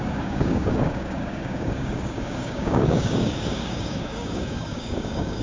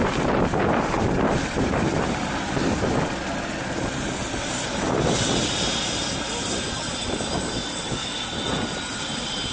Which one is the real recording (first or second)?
second